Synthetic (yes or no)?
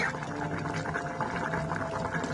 no